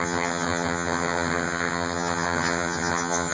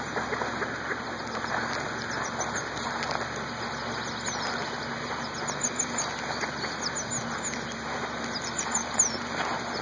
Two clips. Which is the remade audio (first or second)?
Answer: first